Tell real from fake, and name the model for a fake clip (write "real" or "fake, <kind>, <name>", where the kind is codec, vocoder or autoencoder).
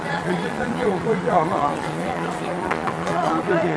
fake, vocoder, Vocos